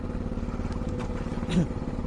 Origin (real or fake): real